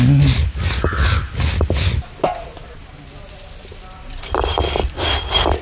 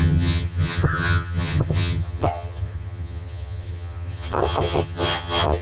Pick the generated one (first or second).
second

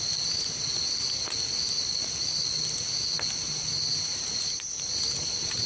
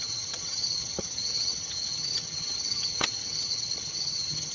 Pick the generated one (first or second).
second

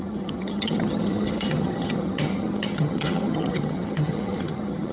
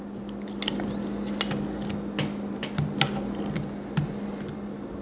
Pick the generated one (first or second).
first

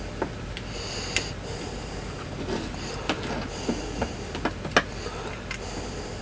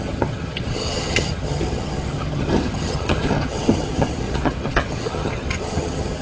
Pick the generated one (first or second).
second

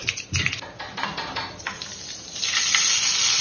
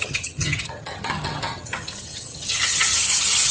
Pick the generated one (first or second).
second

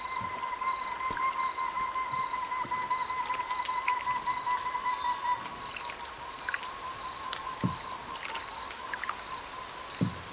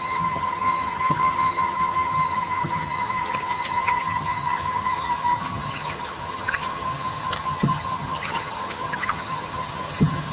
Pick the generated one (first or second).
second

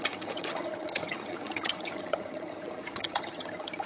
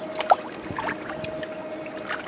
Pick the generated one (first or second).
first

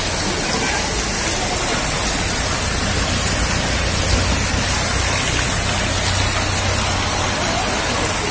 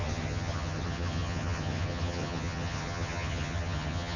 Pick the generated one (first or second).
second